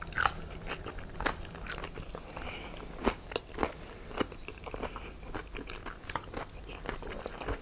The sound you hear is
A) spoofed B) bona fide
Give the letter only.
B